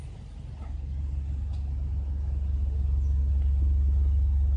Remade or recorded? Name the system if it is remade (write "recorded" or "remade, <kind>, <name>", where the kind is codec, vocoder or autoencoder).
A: recorded